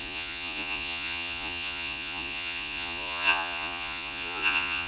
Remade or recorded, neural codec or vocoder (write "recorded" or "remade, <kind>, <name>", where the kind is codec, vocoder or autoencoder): remade, vocoder, Vocos